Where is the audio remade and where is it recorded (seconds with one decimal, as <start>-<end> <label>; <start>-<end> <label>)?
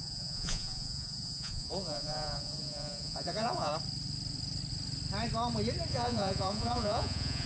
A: 0.0-3.7 remade; 3.7-5.9 recorded; 5.9-7.5 remade